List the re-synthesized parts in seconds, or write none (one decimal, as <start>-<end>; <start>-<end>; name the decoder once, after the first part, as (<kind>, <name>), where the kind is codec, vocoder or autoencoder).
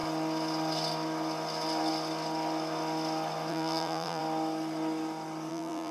3.5-4.2 (vocoder, BigVGAN v2); 5.5-5.9